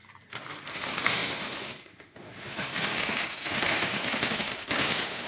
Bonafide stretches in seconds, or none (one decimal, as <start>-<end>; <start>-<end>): 0.0-0.7